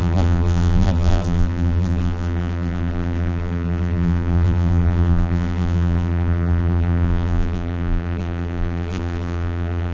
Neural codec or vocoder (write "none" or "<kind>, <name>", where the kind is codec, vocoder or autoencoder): vocoder, BigVGAN v2